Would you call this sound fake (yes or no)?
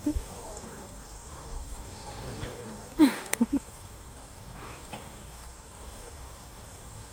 yes